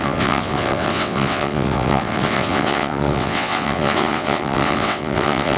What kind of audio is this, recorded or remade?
remade